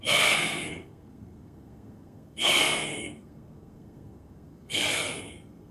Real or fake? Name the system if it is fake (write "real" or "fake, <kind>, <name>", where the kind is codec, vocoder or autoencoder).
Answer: fake, codec, SNAC